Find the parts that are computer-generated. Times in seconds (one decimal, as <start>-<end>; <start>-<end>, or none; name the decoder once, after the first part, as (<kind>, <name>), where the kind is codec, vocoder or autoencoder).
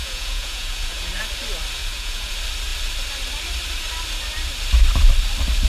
0.0-1.2 (vocoder, Vocos); 1.8-2.3